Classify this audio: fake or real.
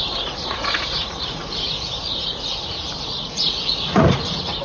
fake